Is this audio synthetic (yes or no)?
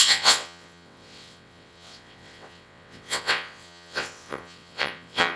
yes